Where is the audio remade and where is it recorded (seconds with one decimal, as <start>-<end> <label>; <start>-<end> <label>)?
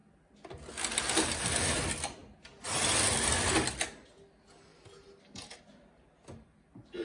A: 0.0-7.0 recorded